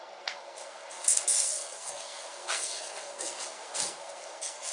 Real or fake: fake